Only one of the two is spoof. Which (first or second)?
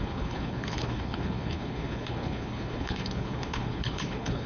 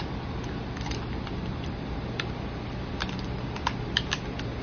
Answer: first